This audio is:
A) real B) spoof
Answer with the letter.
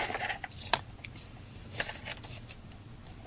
A